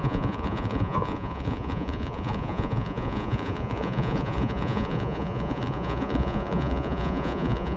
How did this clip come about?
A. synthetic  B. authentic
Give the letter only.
A